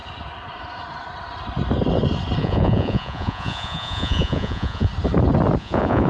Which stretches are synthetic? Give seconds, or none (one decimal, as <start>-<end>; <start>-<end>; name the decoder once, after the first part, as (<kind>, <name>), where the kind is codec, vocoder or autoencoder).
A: 2.4-4.9 (vocoder, Vocos); 5.6-6.1